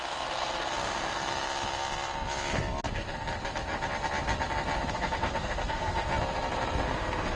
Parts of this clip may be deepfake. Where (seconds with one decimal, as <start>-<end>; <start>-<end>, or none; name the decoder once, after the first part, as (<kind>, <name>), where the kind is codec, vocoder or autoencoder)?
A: 0.0-1.3 (codec, SNAC); 4.9-6.1; 6.9-7.4